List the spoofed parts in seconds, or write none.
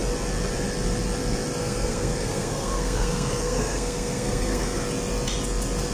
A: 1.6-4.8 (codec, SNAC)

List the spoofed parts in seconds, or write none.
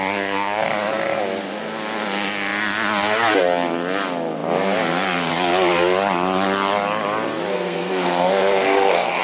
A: 7.5-9.2 (codec, SNAC)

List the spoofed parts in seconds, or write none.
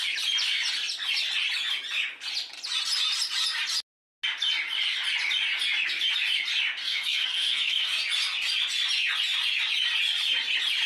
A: 6.8-7.9 (codec, SNAC)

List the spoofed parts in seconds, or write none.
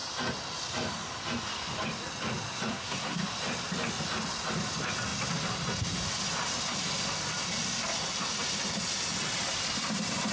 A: 2.7-3.2 (codec, SNAC)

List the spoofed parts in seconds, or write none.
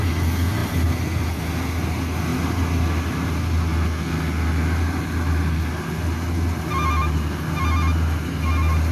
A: none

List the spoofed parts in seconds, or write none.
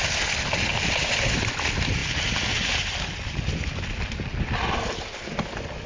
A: none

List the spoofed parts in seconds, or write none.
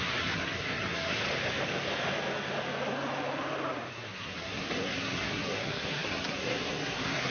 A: 0.0-1.2 (codec, SNAC); 3.9-7.3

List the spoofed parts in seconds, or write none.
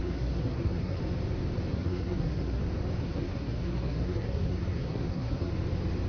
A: 0.0-1.0 (codec, SNAC); 1.7-2.6; 3.0-5.5